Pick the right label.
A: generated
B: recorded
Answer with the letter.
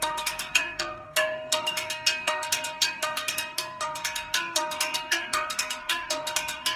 A